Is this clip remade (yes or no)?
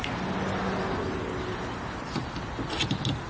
no